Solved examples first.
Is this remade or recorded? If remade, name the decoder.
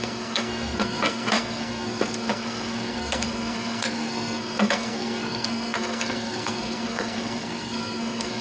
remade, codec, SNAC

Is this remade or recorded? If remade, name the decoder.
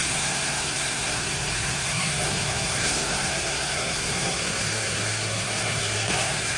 remade, codec, SNAC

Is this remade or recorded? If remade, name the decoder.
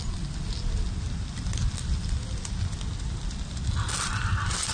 recorded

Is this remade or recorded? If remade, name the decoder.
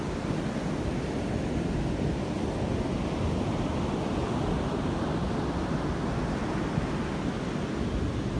recorded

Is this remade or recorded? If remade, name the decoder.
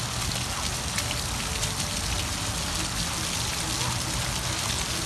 recorded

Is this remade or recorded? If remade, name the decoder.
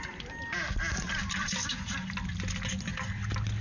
recorded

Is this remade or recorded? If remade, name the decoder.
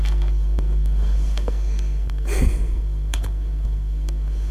remade, codec, SNAC